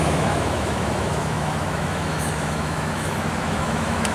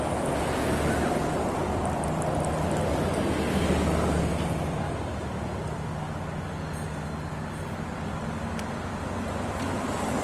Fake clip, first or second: first